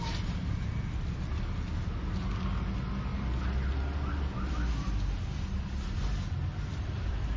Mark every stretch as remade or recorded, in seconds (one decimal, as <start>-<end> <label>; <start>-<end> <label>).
0.0-7.4 recorded